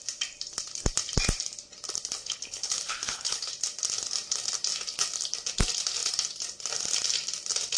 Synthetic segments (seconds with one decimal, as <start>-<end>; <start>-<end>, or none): 2.2-3.5